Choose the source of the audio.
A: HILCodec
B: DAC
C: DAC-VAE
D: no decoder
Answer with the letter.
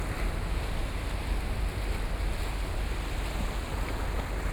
D